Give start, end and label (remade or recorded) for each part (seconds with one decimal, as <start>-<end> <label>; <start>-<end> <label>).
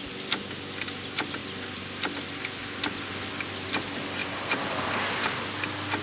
0.0-6.0 recorded